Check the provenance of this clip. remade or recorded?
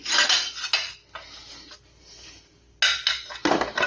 recorded